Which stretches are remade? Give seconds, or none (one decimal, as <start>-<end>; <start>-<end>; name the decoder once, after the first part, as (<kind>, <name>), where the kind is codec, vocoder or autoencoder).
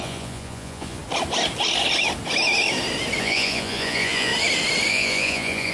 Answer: 0.0-1.0 (vocoder, Vocos); 3.2-4.3; 4.9-5.7